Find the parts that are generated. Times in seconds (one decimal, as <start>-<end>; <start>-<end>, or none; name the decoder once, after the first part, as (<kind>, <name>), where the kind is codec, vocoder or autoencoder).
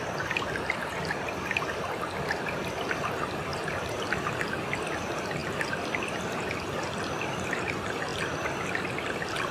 3.5-4.7 (vocoder, BigVGAN v2)